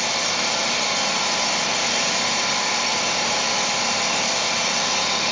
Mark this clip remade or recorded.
remade